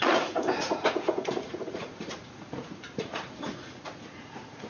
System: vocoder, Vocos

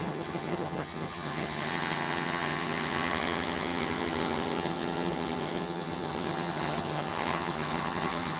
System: vocoder, HiFi-GAN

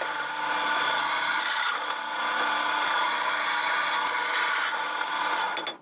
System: none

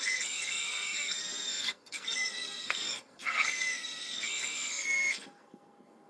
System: codec, SNAC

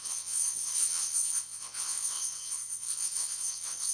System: vocoder, WaveNeXt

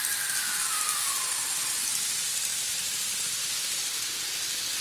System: none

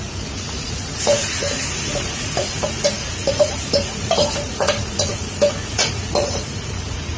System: vocoder, Vocos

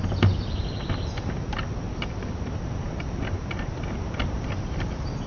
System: none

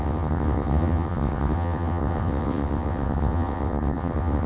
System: vocoder, WaveNeXt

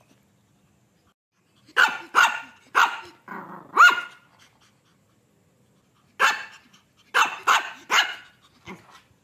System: none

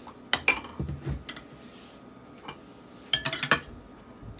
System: none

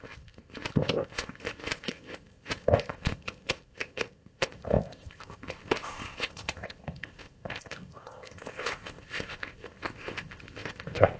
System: codec, ZipCodec